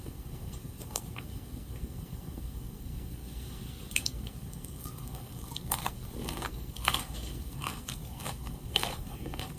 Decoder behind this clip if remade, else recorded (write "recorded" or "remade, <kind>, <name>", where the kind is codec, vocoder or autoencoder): remade, codec, SNAC